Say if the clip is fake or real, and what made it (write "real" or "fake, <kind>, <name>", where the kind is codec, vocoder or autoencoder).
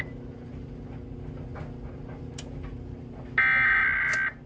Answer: real